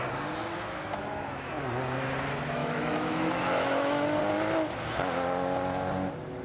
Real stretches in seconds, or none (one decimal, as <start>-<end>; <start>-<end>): 0.0-0.4; 1.5-2.6; 4.2-6.4